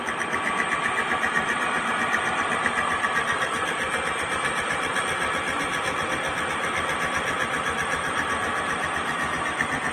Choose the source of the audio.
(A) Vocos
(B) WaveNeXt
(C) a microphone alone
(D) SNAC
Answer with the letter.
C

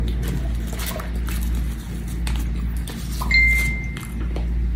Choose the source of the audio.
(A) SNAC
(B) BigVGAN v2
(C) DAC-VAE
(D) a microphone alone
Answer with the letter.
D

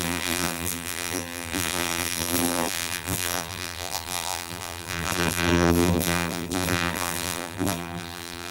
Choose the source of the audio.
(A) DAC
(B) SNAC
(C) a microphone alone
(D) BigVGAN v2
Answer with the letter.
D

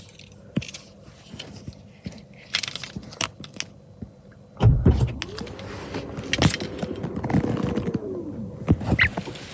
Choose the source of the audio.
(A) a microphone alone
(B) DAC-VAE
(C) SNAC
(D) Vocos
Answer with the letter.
A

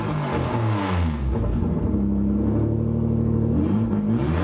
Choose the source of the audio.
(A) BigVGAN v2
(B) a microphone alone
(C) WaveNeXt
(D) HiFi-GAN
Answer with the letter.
B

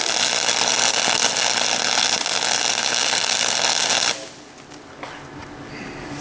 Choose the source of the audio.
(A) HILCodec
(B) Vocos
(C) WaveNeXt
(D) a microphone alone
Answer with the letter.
D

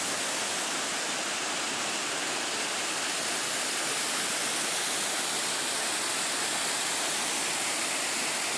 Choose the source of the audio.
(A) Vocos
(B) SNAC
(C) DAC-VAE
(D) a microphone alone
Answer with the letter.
D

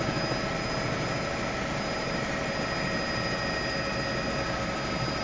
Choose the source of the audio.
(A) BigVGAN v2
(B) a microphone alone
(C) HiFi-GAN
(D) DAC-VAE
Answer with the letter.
B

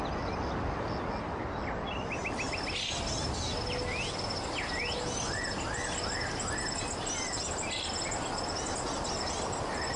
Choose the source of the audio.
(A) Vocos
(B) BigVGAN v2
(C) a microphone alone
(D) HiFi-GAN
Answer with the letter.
C